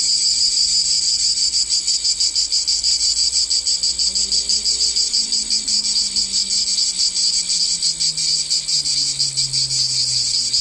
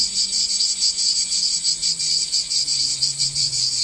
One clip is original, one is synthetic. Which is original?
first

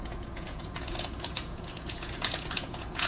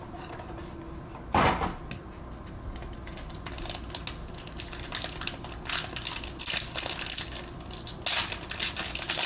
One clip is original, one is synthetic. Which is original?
second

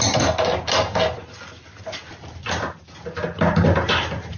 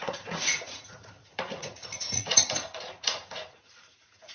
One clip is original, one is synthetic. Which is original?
first